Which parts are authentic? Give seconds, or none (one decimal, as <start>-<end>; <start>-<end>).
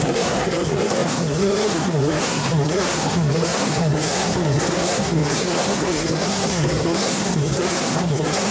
none